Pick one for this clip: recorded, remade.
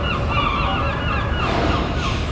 recorded